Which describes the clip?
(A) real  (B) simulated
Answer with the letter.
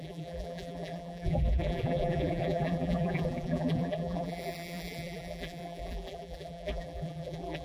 B